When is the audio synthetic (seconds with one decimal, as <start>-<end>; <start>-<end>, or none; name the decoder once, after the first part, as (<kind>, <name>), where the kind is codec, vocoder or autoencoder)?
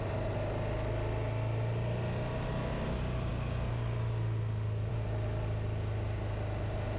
none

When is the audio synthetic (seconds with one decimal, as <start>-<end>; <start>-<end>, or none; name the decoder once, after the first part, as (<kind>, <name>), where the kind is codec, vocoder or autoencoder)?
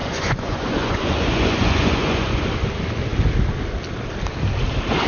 0.0-2.5 (vocoder, Vocos)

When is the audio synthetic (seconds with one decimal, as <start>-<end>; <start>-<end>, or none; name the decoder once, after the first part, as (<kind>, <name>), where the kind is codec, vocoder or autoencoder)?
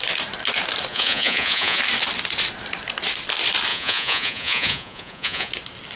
0.9-1.8 (vocoder, Vocos); 3.7-5.5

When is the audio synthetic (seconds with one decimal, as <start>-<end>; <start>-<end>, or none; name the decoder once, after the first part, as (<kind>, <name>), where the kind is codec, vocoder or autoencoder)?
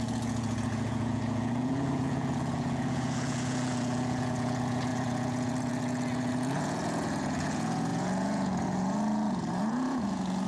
0.0-10.5 (vocoder, Vocos)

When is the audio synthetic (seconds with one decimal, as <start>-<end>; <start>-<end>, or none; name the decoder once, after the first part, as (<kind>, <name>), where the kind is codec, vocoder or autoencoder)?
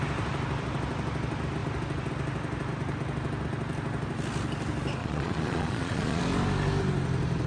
5.0-6.2 (vocoder, Vocos)